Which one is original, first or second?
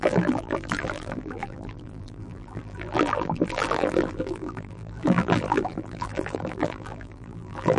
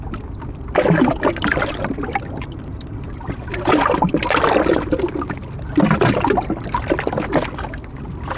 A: second